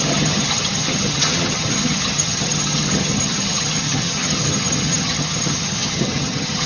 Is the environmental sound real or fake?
fake